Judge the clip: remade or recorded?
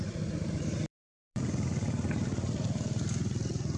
remade